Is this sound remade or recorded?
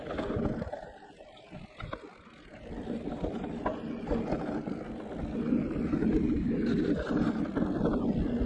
recorded